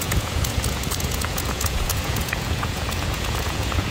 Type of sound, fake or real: fake